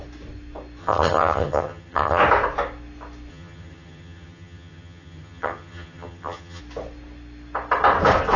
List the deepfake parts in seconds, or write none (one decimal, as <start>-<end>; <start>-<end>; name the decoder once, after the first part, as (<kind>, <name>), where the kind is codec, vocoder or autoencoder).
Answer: 0.8-2.2 (vocoder, HiFi-GAN); 3.3-6.6